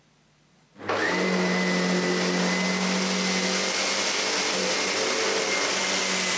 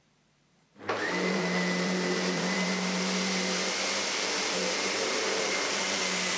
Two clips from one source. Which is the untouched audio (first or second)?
first